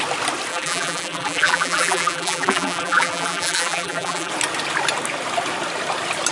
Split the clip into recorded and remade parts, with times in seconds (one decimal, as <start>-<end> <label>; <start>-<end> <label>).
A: 0.0-0.5 recorded; 0.5-4.3 remade; 4.3-6.3 recorded